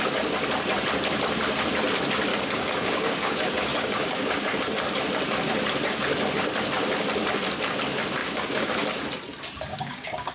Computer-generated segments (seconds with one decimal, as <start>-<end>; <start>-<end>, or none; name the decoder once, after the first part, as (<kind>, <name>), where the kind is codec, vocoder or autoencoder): 2.3-4.6 (codec, DAC); 8.2-8.7; 9.7-10.3